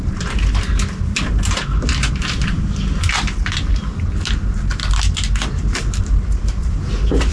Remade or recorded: recorded